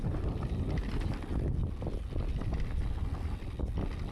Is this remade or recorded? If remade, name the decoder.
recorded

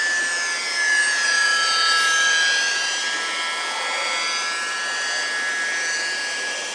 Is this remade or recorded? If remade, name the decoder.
recorded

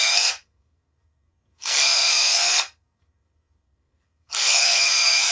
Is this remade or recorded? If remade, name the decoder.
remade, codec, SNAC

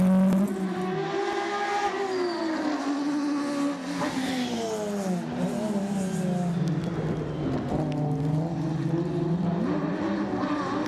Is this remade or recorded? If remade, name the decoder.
recorded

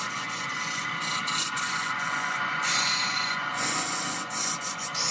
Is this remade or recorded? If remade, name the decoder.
remade, vocoder, Vocos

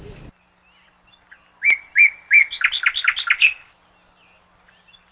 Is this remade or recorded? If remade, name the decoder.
recorded